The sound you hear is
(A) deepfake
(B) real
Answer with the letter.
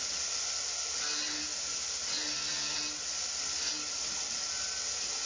B